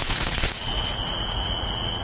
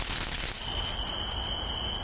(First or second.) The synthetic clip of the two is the first